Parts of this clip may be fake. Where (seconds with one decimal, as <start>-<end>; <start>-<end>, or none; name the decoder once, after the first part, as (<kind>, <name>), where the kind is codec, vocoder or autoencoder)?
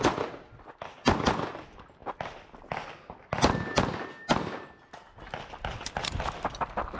none